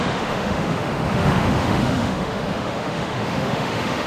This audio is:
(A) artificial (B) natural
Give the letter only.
A